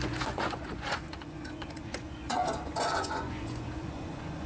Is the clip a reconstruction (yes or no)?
yes